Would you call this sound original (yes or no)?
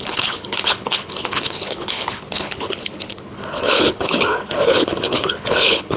no